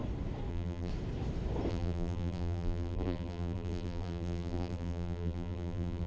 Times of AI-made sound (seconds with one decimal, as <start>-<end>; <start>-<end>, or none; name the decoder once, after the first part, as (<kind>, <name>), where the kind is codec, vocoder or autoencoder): 0.5-0.9 (vocoder, BigVGAN v2); 1.7-6.1